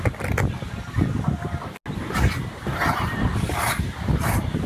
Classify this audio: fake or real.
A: real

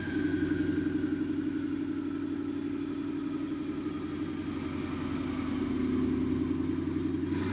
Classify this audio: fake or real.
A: real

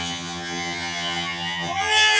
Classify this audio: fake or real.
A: fake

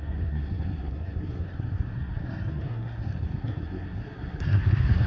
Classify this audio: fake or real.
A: fake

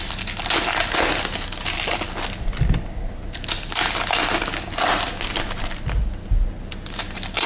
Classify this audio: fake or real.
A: real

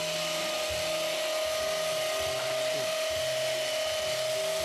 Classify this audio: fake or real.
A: real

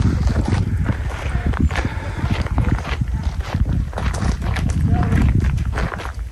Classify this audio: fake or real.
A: fake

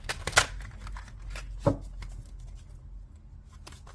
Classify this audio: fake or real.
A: real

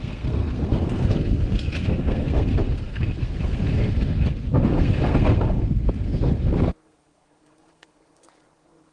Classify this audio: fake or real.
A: fake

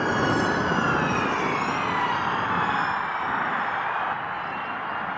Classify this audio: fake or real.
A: real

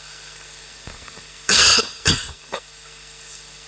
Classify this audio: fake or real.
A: fake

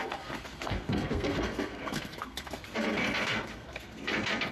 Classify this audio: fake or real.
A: fake